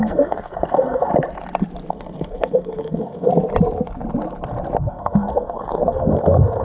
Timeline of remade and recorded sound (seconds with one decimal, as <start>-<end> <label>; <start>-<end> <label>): 0.0-1.1 remade; 1.1-1.9 recorded; 1.9-3.3 remade; 3.3-4.8 recorded; 4.8-6.6 remade